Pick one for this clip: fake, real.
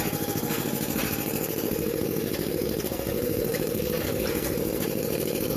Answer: fake